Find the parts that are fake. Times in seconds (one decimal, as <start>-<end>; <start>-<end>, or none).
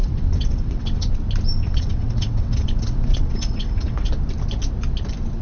0.0-1.1; 1.7-4.1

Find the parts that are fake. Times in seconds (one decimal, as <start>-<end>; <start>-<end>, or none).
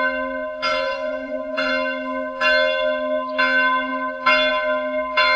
0.7-1.7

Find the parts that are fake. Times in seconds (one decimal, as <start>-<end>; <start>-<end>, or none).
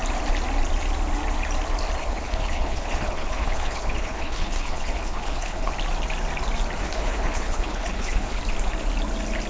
2.0-5.7; 6.8-8.4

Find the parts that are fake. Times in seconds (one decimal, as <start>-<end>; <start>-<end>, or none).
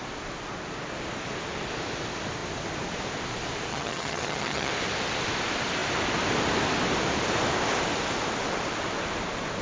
3.7-4.7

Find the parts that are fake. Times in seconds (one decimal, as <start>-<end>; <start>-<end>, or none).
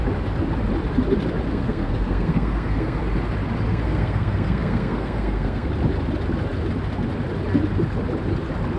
1.5-3.0; 3.7-5.7